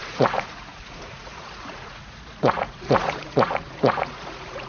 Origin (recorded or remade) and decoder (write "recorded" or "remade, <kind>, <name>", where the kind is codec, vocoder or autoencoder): remade, vocoder, Vocos